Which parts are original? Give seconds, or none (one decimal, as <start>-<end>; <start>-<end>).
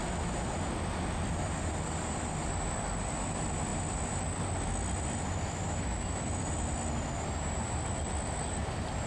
0.0-9.1